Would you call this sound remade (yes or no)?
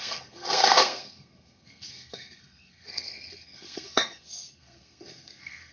yes